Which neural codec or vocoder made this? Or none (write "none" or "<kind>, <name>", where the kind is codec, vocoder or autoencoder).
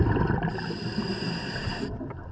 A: none